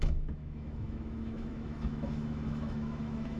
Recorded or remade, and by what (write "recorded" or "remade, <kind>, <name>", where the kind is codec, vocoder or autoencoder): remade, autoencoder, DAC-VAE